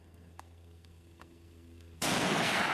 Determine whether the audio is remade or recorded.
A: remade